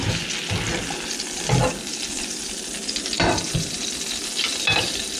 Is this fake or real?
real